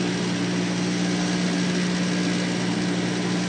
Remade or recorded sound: recorded